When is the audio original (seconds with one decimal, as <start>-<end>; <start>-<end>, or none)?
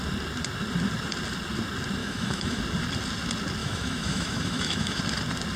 0.0-2.0; 2.6-3.6; 5.0-5.6